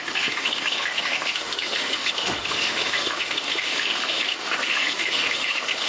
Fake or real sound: fake